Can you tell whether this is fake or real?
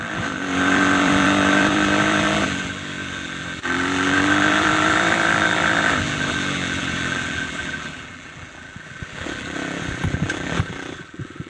fake